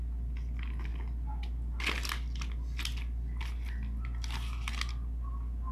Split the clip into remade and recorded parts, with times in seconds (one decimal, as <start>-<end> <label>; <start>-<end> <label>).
0.0-5.7 recorded